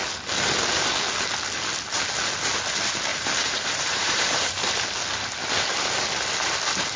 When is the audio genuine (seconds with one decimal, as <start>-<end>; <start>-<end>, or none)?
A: 0.0-3.1; 4.7-7.0